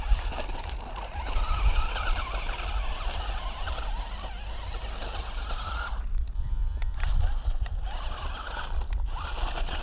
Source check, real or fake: real